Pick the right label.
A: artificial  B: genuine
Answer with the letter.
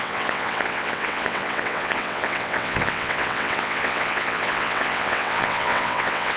A